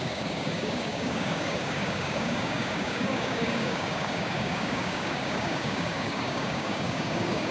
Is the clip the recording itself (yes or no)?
no